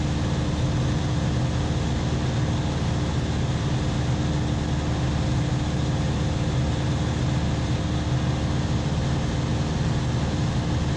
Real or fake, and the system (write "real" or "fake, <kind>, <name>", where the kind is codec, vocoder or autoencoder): real